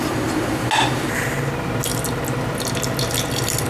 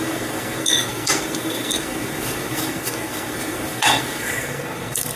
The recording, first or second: first